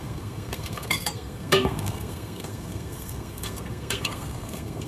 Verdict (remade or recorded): remade